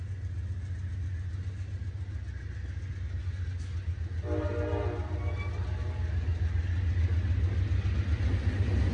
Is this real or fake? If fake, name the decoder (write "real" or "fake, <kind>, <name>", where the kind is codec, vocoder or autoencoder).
real